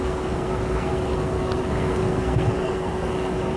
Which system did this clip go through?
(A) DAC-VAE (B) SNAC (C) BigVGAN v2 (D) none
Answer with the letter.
B